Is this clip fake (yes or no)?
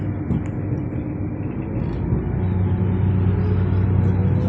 no